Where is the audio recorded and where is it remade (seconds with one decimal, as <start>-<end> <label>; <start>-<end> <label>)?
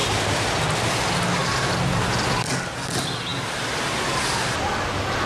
0.0-5.3 recorded